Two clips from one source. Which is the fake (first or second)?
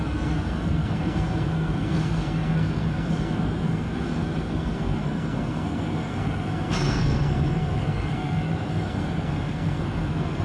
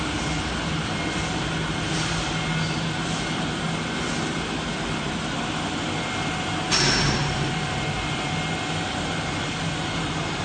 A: first